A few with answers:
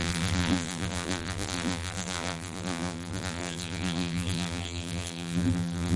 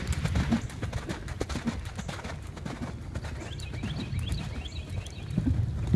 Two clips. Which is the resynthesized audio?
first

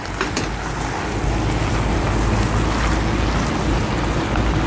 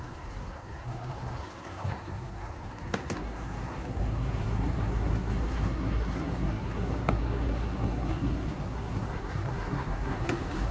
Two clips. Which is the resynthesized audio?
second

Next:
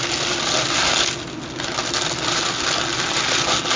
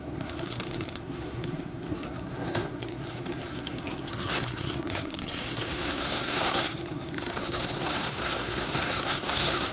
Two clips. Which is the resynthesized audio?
second